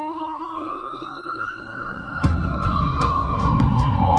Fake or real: fake